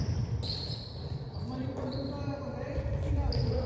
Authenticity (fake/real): real